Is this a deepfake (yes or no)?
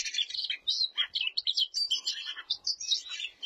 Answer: yes